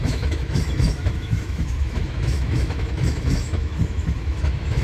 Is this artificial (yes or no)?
yes